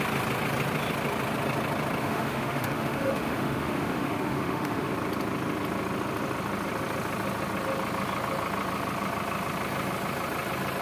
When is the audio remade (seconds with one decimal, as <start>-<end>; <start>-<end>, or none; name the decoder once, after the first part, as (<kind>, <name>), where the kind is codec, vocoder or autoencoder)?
2.0-4.9 (autoencoder, DAC-VAE)